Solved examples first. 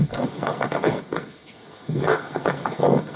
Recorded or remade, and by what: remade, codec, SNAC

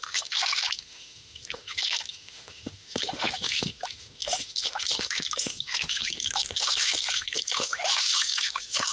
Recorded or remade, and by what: remade, autoencoder, DAC-VAE